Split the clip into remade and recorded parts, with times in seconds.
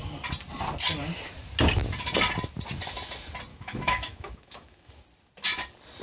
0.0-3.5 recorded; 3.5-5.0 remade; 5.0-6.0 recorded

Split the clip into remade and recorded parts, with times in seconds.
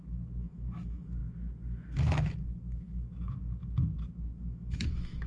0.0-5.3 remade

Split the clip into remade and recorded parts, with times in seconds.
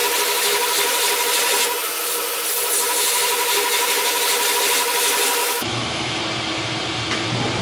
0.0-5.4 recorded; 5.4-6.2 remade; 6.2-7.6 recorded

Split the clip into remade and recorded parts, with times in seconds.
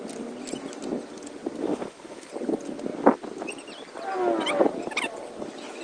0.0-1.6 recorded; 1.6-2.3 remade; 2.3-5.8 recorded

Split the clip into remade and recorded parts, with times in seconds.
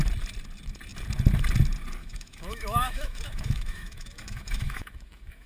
0.0-2.0 recorded; 2.0-5.5 remade